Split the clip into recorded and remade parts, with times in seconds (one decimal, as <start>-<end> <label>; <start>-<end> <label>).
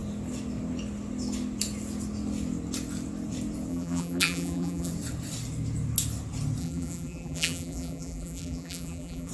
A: 0.0-3.7 recorded; 3.7-4.9 remade; 4.9-6.6 recorded; 6.6-9.3 remade